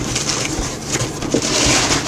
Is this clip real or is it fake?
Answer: real